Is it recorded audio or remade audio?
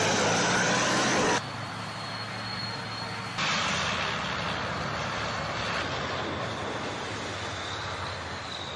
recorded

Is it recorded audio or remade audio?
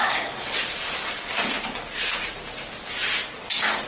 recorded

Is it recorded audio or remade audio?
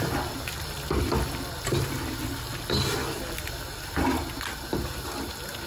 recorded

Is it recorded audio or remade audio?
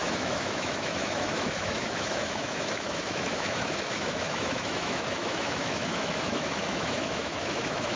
remade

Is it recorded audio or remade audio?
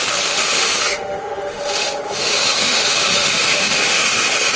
remade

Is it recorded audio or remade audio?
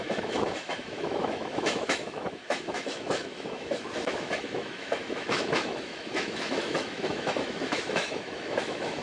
remade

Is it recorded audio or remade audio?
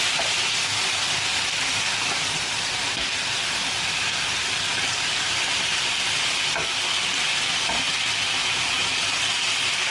recorded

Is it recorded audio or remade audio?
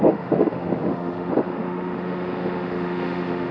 remade